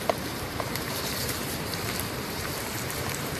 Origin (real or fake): fake